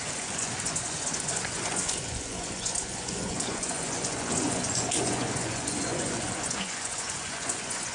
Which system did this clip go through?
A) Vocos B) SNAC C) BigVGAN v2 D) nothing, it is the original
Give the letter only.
A